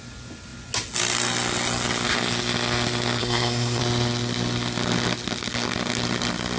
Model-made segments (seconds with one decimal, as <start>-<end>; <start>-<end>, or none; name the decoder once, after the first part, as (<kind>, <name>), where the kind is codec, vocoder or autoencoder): 3.2-3.8 (codec, SNAC)